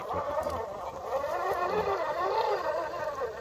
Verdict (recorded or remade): remade